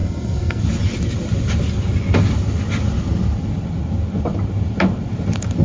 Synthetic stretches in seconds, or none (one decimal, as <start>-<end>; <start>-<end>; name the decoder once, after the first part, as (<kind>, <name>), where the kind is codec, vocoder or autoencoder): 0.0-0.6 (codec, SNAC)